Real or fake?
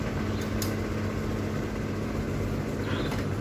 real